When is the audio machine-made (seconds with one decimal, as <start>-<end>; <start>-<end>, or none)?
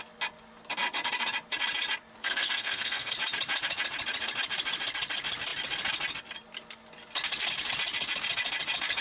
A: 2.2-3.1